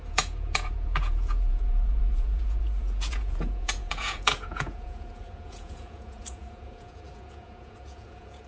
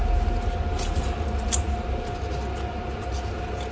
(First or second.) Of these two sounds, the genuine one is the second